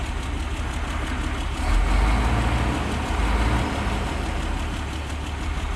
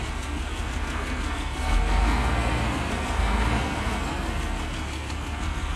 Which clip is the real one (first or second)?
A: first